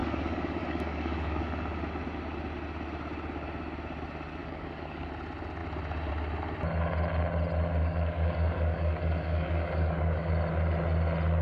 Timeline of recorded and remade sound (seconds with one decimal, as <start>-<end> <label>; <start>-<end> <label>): 0.0-1.4 remade; 1.4-4.4 recorded; 4.4-5.1 remade; 5.1-7.8 recorded; 7.8-10.3 remade; 10.3-11.4 recorded